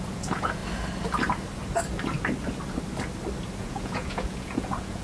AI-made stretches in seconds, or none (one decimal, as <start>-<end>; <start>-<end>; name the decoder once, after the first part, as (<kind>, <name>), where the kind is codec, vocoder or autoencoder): 0.0-0.6 (vocoder, Vocos); 3.6-5.0